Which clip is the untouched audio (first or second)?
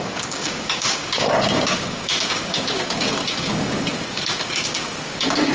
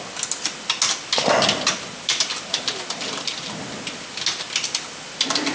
second